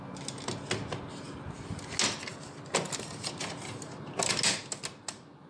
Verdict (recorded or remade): recorded